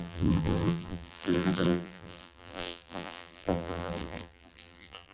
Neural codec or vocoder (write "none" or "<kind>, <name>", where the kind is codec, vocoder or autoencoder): vocoder, BigVGAN v2